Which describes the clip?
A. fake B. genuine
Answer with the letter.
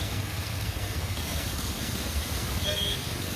A